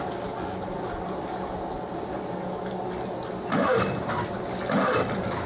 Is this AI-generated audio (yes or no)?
no